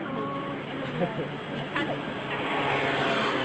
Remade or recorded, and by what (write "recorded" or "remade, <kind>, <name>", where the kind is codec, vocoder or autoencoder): recorded